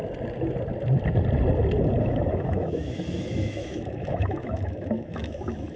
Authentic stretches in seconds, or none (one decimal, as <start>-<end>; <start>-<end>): 0.0-2.0